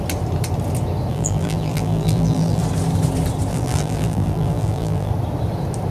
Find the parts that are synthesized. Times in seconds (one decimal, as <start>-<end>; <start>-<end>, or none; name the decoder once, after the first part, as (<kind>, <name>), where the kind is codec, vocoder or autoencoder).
1.1-2.6 (vocoder, BigVGAN v2); 3.5-5.1